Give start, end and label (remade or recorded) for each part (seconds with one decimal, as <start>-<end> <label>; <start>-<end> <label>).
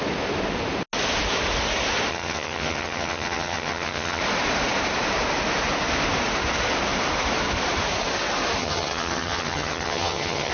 0.0-2.1 recorded; 2.1-4.2 remade; 4.2-8.6 recorded; 8.6-10.5 remade